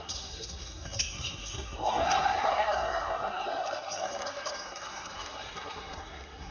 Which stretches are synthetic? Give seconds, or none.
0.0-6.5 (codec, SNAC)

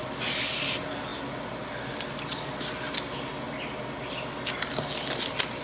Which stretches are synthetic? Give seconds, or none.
none